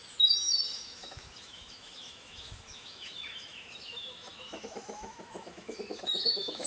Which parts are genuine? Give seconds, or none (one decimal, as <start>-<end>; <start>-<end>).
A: none